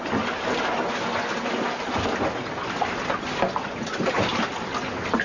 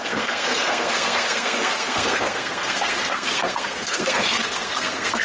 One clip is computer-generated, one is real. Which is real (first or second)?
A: first